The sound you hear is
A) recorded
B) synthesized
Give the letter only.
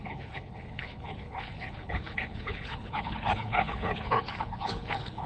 B